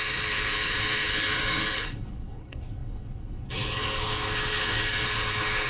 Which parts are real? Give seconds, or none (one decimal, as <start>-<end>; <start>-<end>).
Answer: none